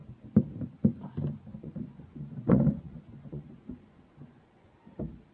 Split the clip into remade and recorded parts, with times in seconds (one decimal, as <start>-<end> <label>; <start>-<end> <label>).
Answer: 0.0-1.5 recorded; 1.5-4.7 remade; 4.7-5.3 recorded